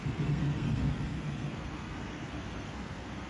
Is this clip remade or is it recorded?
remade